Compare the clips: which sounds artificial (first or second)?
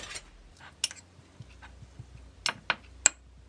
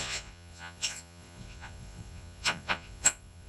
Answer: second